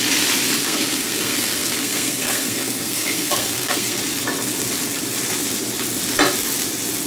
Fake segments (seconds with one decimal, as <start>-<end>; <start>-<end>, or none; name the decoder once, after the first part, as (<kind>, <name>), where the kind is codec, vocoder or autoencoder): 0.6-4.0 (codec, SNAC)